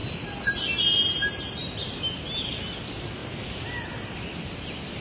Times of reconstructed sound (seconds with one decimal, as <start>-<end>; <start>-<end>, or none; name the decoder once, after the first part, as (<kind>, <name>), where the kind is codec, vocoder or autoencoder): none